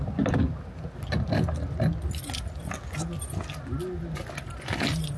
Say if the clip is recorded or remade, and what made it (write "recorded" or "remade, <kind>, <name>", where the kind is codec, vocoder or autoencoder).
recorded